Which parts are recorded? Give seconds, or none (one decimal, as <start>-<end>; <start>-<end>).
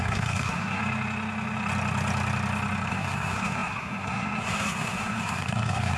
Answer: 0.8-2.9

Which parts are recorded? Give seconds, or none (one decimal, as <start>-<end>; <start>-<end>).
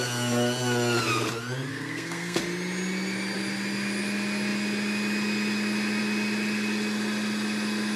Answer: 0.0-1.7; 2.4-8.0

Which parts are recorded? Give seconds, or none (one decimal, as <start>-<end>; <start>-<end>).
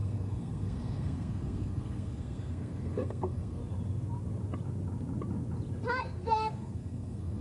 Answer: 3.6-5.9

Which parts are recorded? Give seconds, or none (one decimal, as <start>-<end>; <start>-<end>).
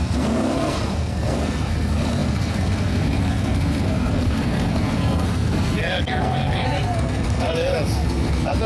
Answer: none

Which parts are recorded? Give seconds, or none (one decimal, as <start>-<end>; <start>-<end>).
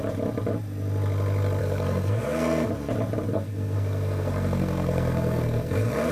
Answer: 0.0-1.6; 2.7-3.3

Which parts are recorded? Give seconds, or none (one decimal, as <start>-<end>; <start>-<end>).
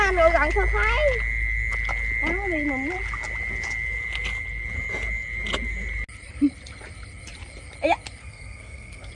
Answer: 0.0-8.2